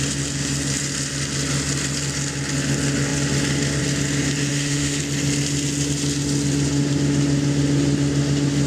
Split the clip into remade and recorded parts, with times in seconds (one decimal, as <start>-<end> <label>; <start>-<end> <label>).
0.0-4.5 recorded; 4.5-5.0 remade; 5.0-8.7 recorded